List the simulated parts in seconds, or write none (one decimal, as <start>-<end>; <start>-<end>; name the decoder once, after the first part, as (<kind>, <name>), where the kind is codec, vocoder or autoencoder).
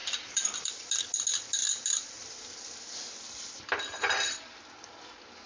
0.0-0.7 (vocoder, BigVGAN v2)